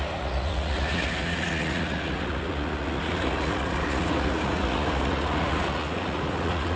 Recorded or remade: remade